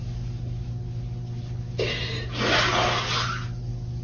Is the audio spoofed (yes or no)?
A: no